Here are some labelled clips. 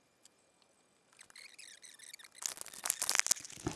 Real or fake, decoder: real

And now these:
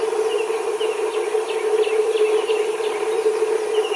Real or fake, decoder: real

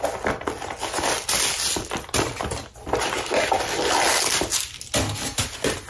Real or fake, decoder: real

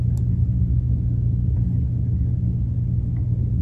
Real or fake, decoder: real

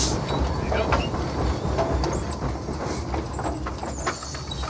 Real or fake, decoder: real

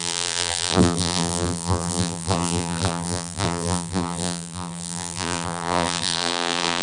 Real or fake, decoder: fake, vocoder, BigVGAN v2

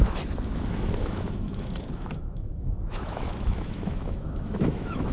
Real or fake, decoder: fake, autoencoder, DAC-VAE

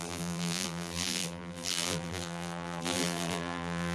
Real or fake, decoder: fake, vocoder, BigVGAN v2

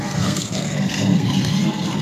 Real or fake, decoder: fake, codec, SNAC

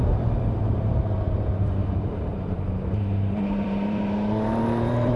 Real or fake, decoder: fake, vocoder, BigVGAN v2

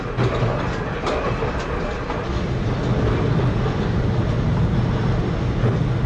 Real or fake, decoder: real